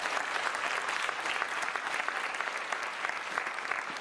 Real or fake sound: real